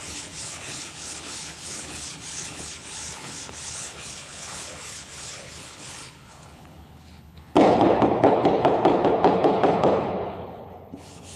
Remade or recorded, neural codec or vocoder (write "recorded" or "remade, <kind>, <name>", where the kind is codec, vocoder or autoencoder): remade, codec, HILCodec